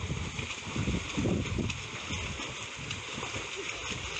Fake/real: real